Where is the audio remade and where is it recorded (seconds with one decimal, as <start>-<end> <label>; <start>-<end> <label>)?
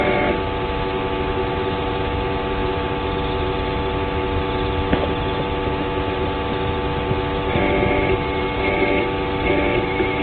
0.0-10.2 recorded